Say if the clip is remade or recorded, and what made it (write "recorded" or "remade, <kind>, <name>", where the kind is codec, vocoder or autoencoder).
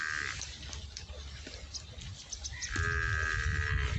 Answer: recorded